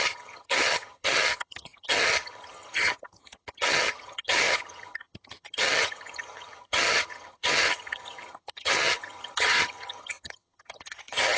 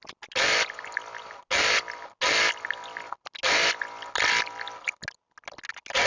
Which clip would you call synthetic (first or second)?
first